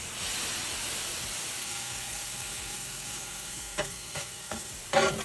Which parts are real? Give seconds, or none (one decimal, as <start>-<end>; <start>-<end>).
0.0-1.6; 4.7-5.2